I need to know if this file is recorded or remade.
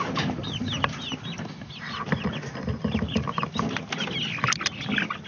recorded